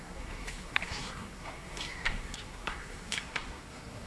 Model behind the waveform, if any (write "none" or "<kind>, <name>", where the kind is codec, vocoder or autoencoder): codec, SNAC